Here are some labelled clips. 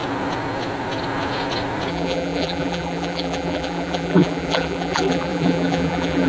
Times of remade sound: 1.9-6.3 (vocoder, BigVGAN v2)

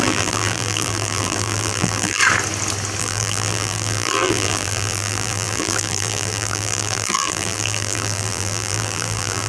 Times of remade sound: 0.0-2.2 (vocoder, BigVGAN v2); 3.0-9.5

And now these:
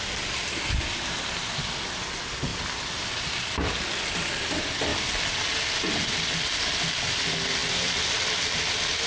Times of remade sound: 2.5-3.4 (vocoder, BigVGAN v2); 4.9-5.9; 7.6-8.5

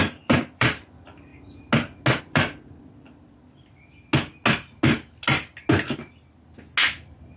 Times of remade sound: 0.0-1.3 (vocoder, BigVGAN v2); 2.2-4.1; 6.9-7.4